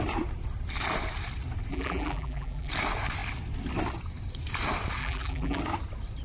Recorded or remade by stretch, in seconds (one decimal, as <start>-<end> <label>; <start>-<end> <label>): 0.0-1.7 recorded; 1.7-2.7 remade; 2.7-5.0 recorded; 5.0-5.6 remade; 5.6-6.2 recorded